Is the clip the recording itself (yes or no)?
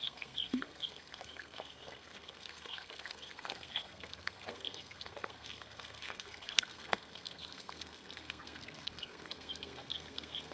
no